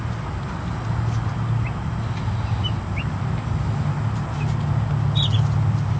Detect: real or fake real